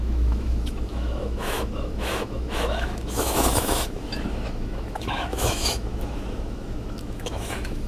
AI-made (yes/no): yes